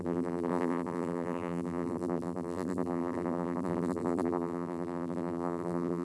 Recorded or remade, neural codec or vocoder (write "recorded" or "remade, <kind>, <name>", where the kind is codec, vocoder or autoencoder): remade, vocoder, BigVGAN v2